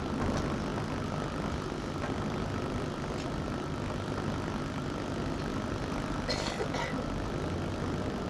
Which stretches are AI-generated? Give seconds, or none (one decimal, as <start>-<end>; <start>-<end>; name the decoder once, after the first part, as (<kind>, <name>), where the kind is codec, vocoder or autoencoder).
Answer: none